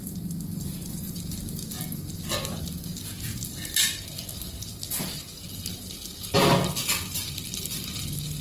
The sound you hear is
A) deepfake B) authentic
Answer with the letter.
B